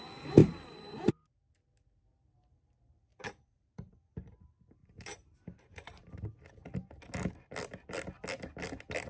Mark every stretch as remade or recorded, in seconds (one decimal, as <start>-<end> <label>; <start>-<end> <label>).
0.0-0.4 recorded; 0.4-1.5 remade; 1.5-3.1 recorded; 3.1-4.1 remade; 4.1-4.8 recorded; 4.8-6.1 remade; 6.1-9.1 recorded